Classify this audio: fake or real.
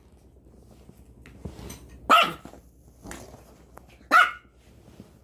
real